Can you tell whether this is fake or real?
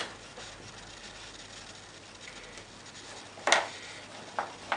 real